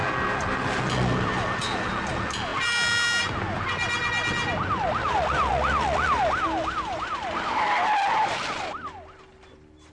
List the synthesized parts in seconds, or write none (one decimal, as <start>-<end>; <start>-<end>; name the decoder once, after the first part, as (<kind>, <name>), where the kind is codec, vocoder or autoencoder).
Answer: none